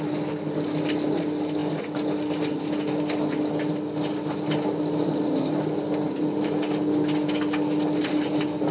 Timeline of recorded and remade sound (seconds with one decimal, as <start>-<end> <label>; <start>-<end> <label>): 0.0-8.7 recorded